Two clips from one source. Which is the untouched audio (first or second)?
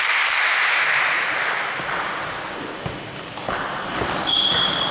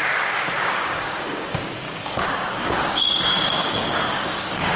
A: first